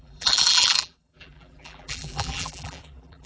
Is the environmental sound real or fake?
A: fake